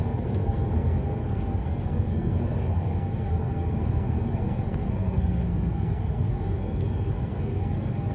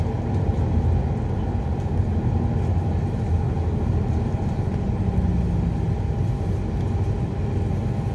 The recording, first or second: second